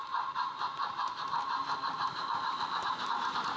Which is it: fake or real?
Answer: fake